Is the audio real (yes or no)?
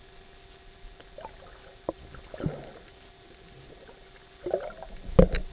yes